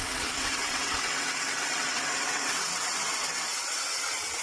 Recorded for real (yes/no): no